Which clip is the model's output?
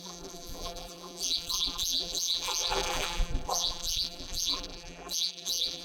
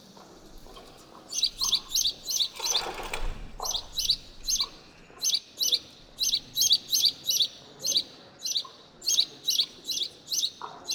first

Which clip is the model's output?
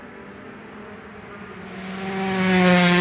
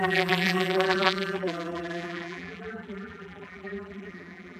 second